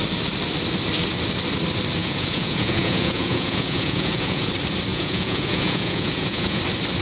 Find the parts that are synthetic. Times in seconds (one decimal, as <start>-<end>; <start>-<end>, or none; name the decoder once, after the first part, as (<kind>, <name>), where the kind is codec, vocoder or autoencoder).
2.0-4.5 (vocoder, Vocos); 4.9-6.6